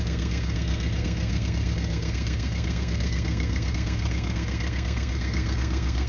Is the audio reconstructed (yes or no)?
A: yes